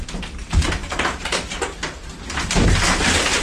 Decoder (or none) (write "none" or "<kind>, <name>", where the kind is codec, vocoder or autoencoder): vocoder, BigVGAN v2